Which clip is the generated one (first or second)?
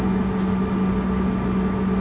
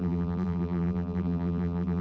second